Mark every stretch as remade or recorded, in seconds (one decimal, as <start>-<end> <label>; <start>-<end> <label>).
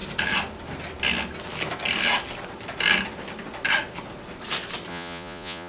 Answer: 0.0-4.9 recorded; 4.9-5.7 remade